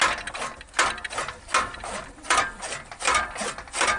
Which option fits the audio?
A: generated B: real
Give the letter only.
B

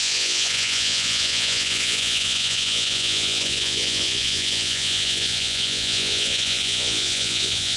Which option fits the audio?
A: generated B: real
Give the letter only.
A